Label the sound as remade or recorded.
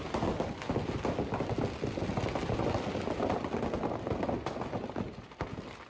recorded